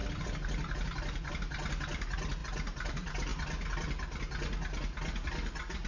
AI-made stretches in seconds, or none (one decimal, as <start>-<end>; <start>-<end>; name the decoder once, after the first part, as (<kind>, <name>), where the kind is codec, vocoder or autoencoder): none